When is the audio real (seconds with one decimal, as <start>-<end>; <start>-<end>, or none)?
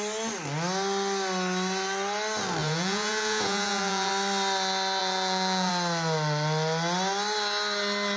0.0-2.6; 4.1-5.0; 5.7-8.2